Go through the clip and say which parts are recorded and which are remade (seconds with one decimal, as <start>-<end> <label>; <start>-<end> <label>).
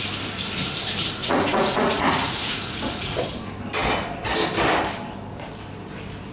0.0-1.2 recorded; 1.2-3.2 remade; 3.2-6.3 recorded